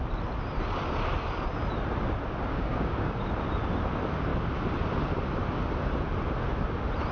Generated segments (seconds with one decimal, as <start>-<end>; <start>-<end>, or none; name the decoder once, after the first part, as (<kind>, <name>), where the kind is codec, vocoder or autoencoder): 2.5-3.2 (codec, DAC)